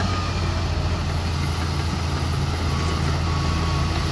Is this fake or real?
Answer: real